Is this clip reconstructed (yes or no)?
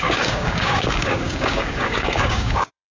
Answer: yes